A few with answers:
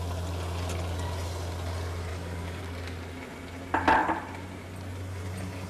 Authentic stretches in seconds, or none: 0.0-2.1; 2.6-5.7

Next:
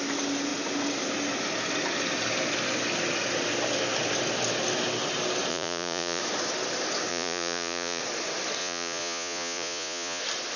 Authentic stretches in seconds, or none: 0.0-5.5; 6.2-7.1; 8.0-8.6; 10.2-10.6

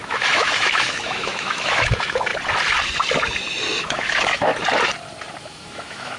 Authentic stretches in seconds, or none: 2.3-3.8; 4.5-5.4

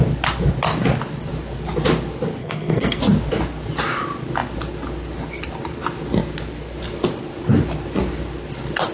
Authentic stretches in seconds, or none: 0.0-2.4; 3.0-8.9